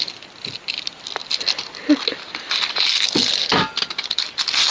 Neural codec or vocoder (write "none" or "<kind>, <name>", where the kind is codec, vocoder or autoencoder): none